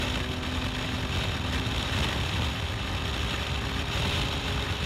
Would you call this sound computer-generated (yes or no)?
no